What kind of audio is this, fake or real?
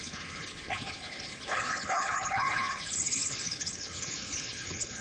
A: fake